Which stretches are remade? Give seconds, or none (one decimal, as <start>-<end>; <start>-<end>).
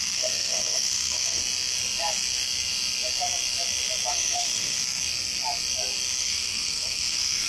0.0-1.4; 4.1-4.8; 6.2-7.5